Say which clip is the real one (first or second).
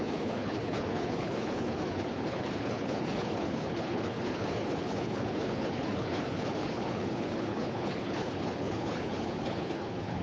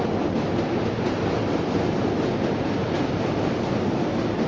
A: second